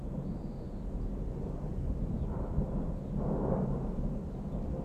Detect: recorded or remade recorded